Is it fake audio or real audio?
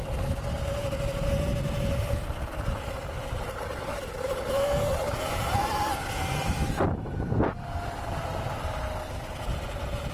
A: real